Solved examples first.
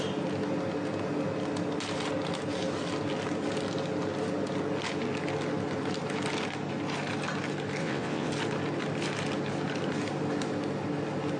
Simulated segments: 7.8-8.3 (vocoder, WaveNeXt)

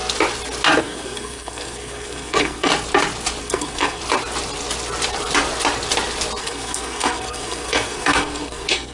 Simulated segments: 0.8-2.7 (codec, SNAC); 3.4-4.0; 6.4-8.9

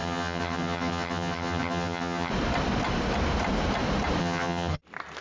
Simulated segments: 0.0-2.3 (vocoder, HiFi-GAN); 4.2-4.8